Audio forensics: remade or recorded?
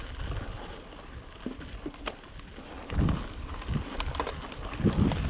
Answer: recorded